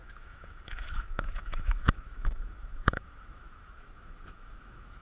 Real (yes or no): no